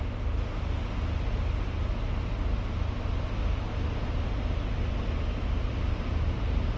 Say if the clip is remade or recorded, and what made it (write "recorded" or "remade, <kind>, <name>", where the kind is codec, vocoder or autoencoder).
recorded